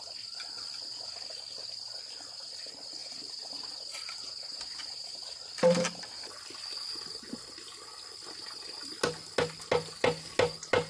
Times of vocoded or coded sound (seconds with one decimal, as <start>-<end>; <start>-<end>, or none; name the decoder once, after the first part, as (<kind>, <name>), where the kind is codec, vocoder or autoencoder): none

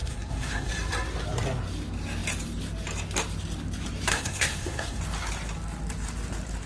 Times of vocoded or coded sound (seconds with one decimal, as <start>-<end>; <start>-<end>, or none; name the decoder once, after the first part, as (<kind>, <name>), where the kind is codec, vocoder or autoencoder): 0.0-0.7 (codec, SNAC); 4.1-5.0

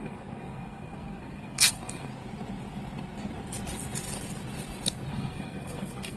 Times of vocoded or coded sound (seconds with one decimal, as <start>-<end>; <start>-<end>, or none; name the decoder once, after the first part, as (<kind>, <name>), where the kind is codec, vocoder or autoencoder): 0.0-2.1 (codec, SNAC); 5.1-6.2

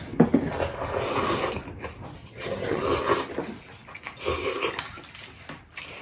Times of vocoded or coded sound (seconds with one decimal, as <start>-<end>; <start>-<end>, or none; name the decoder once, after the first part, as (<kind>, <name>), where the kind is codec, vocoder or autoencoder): 2.2-2.8 (vocoder, HiFi-GAN)

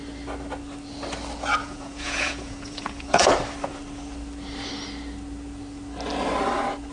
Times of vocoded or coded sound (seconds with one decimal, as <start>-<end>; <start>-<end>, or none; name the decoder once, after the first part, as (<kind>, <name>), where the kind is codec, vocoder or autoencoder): 1.6-3.3 (vocoder, Vocos)

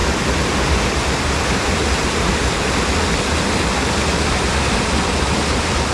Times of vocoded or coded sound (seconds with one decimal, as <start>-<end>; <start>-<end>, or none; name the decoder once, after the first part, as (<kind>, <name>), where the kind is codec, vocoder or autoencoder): none

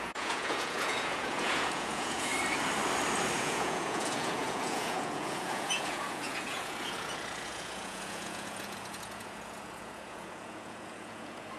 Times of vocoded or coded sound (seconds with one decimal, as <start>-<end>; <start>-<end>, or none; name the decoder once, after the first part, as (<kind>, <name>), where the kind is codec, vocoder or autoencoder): 0.0-2.3 (vocoder, Vocos); 3.4-11.6